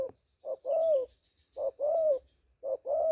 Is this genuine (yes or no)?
no